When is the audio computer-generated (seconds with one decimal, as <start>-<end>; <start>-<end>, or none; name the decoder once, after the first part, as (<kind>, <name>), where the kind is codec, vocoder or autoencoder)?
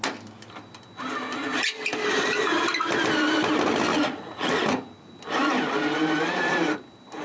3.9-4.6 (vocoder, Vocos)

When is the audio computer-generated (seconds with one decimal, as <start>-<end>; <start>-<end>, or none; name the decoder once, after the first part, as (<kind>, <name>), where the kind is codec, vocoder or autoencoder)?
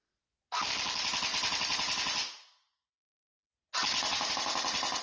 none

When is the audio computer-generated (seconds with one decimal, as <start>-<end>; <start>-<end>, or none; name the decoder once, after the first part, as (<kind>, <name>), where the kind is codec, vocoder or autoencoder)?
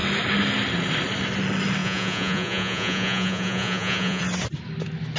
1.8-4.2 (vocoder, Vocos)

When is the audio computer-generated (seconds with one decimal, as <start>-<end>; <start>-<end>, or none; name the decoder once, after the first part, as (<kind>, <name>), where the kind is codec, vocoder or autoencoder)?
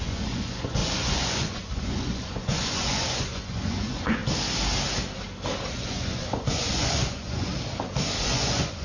0.0-4.2 (vocoder, Vocos); 5.7-7.5; 8.2-8.8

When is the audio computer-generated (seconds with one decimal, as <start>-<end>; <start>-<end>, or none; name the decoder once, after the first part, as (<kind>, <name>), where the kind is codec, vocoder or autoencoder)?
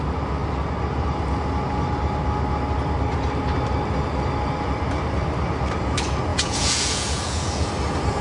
6.3-7.7 (vocoder, Vocos)